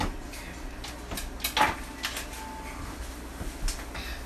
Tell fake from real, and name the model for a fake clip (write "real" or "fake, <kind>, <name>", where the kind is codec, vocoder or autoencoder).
real